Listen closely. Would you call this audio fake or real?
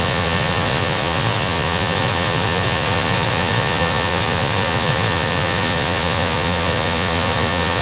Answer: fake